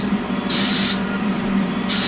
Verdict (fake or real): fake